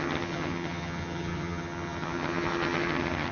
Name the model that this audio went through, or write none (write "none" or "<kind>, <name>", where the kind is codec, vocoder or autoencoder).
vocoder, HiFi-GAN